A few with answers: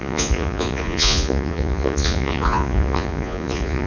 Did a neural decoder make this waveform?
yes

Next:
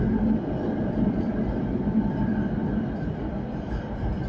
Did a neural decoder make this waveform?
no